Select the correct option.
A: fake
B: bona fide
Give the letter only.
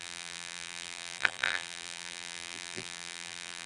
A